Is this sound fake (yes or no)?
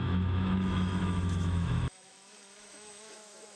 yes